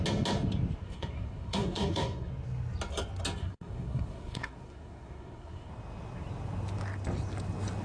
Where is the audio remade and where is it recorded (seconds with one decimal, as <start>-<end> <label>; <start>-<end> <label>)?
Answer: 0.0-0.8 recorded; 0.8-2.3 remade; 2.3-3.4 recorded; 3.4-5.7 remade; 5.7-7.8 recorded